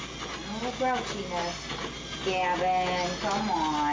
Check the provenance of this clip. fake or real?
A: real